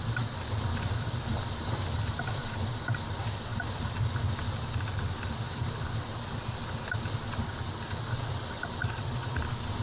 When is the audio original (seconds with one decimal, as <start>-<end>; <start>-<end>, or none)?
0.0-8.8; 9.4-9.8